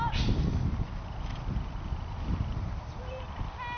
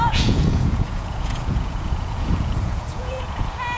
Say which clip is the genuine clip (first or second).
first